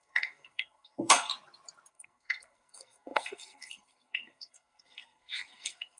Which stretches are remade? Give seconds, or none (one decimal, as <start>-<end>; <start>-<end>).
0.0-1.3; 1.9-6.0